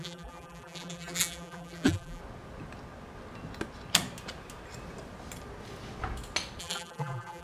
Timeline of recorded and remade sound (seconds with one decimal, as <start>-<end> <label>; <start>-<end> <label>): 0.0-2.2 remade; 2.2-6.6 recorded; 6.6-7.4 remade